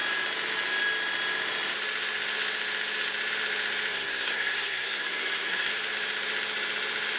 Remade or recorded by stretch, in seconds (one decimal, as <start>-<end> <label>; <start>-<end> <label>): 0.0-3.9 recorded; 3.9-5.7 remade; 5.7-7.2 recorded